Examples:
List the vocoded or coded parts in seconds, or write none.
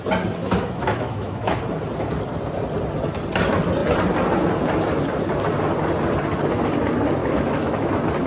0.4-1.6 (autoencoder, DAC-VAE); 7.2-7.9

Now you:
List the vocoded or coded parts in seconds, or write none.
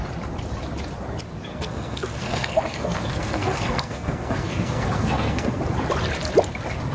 1.5-5.6 (codec, SNAC)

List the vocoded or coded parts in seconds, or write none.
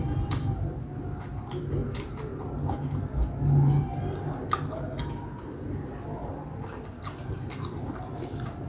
none